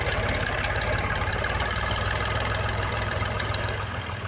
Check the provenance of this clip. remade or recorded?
remade